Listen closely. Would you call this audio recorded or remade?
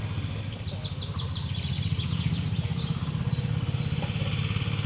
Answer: recorded